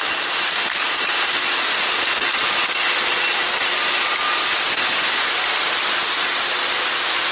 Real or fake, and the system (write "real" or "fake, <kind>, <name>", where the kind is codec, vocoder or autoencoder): real